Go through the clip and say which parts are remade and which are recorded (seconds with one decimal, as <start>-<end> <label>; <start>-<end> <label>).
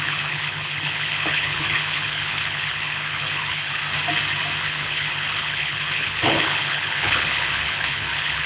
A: 0.0-3.8 remade; 3.8-4.6 recorded; 4.6-8.5 remade